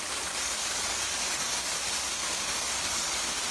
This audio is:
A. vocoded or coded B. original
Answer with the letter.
A